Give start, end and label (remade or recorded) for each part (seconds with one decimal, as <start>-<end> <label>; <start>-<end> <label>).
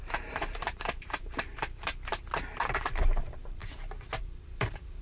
0.0-2.1 remade; 2.1-2.6 recorded; 2.6-3.6 remade; 3.6-4.2 recorded; 4.2-5.0 remade